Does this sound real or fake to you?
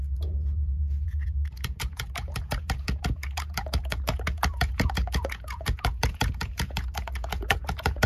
fake